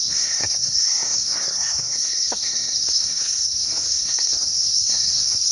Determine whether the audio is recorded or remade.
remade